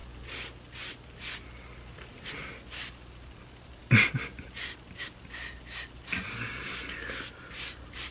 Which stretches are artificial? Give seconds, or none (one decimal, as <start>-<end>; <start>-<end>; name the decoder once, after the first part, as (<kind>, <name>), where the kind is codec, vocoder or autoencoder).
none